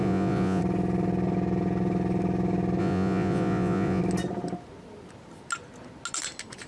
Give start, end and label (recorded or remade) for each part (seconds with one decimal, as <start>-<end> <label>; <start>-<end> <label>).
0.0-0.6 remade; 0.6-2.8 recorded; 2.8-4.0 remade; 4.0-6.7 recorded

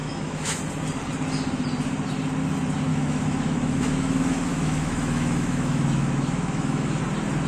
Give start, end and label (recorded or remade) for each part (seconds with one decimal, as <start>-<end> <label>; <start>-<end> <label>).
0.0-0.6 remade; 0.6-2.9 recorded; 2.9-7.0 remade; 7.0-7.5 recorded

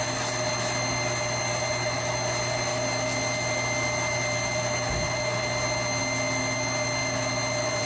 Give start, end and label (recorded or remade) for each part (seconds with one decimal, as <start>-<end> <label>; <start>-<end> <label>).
0.0-7.8 recorded

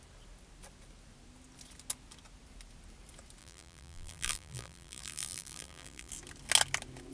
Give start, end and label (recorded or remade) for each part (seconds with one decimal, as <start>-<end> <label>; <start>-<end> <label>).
0.0-3.4 recorded; 3.4-6.1 remade; 6.1-7.1 recorded

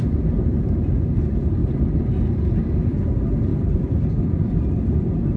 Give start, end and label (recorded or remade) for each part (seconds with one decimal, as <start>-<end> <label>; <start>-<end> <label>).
0.0-3.5 recorded; 3.5-4.1 remade; 4.1-5.4 recorded